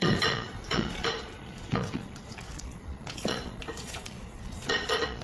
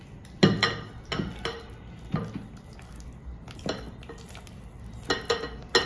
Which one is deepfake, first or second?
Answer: first